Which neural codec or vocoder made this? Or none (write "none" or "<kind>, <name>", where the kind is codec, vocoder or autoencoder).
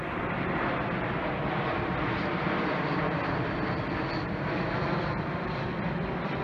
none